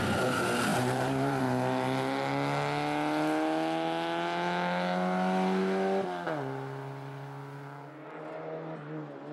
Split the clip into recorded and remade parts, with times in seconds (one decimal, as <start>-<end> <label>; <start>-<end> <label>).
0.0-0.7 recorded; 0.7-1.4 remade; 1.4-9.3 recorded